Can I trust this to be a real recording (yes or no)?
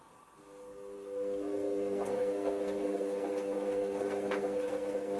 no